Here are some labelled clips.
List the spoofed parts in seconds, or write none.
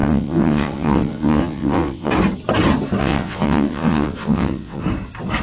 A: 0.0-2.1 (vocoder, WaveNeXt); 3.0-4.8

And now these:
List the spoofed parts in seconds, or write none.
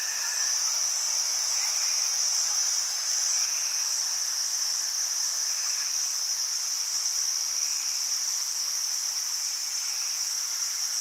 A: 0.0-7.1 (vocoder, BigVGAN v2); 8.1-11.0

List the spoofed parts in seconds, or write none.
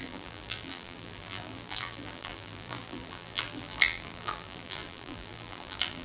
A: 0.0-6.0 (vocoder, BigVGAN v2)